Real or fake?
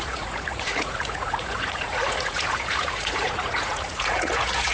fake